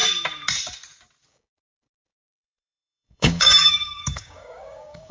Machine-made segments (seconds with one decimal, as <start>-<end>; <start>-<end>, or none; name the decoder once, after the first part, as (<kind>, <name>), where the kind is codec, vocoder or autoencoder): 1.3-5.1 (codec, DAC)